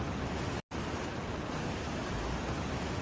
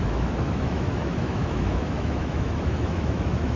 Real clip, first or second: first